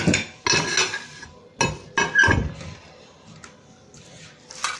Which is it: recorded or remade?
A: recorded